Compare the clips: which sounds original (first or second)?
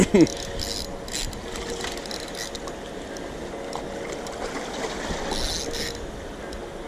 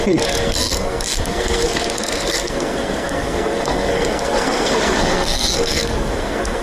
first